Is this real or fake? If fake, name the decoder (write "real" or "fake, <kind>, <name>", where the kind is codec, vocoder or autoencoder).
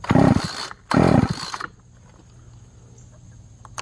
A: real